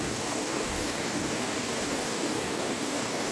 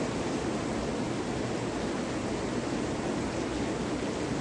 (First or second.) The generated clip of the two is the first